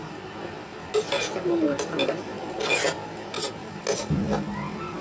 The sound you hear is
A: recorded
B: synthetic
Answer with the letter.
A